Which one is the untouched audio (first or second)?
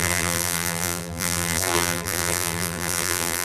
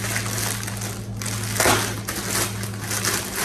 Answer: second